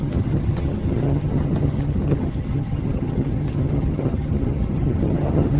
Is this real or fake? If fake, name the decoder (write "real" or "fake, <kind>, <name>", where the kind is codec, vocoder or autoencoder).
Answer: fake, vocoder, HiFi-GAN